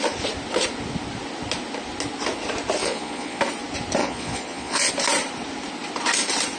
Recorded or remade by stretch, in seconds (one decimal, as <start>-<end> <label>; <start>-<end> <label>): 0.0-2.8 recorded; 2.8-3.4 remade; 3.4-4.0 recorded; 4.0-4.9 remade; 4.9-6.6 recorded